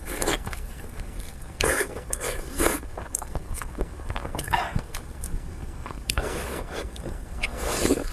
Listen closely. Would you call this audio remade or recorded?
remade